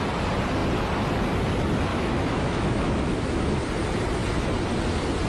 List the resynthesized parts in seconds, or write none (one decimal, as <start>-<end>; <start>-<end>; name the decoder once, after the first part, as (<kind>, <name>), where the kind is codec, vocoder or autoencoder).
1.9-3.6 (autoencoder, DAC-VAE)